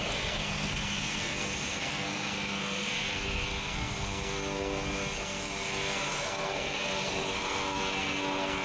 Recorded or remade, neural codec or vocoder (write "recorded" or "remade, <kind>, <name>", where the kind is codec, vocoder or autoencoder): remade, codec, SNAC